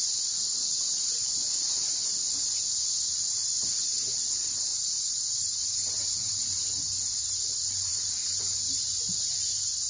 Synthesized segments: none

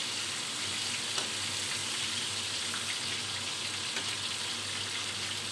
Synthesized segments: 1.8-2.6 (vocoder, BigVGAN v2)

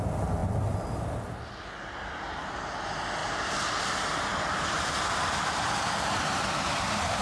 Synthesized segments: 4.3-7.2 (vocoder, BigVGAN v2)